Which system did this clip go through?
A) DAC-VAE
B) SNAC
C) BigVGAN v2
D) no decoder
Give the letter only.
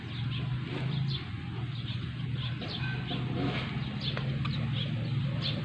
D